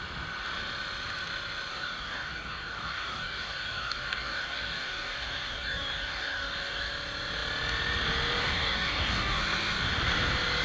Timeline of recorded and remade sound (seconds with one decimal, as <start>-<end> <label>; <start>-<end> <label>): 0.0-1.7 recorded; 1.7-6.9 remade; 6.9-8.4 recorded; 8.4-9.4 remade; 9.4-10.6 recorded